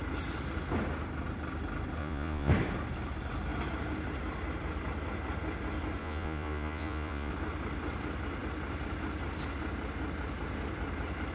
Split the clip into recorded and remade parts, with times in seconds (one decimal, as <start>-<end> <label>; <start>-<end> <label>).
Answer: 0.0-2.0 recorded; 2.0-2.5 remade; 2.5-6.0 recorded; 6.0-7.3 remade; 7.3-11.3 recorded